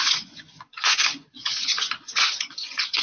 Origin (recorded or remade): remade